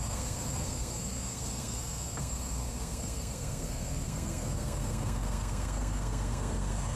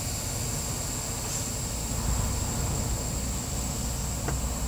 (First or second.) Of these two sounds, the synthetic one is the first